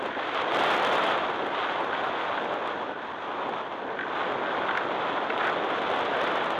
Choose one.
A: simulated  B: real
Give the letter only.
B